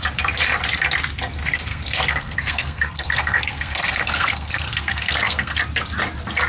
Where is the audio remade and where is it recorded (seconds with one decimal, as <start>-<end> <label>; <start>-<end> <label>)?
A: 0.0-1.7 recorded; 1.7-5.6 remade; 5.6-6.5 recorded